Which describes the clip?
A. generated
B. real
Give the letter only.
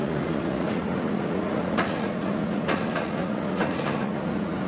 A